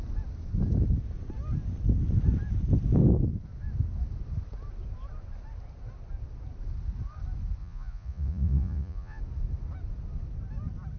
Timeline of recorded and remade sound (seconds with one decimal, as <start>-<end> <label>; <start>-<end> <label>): 0.0-7.6 recorded; 7.6-9.2 remade; 9.2-11.0 recorded